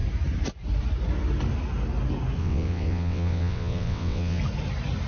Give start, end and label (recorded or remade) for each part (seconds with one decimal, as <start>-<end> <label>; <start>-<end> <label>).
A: 0.0-2.4 recorded; 2.4-4.4 remade; 4.4-5.1 recorded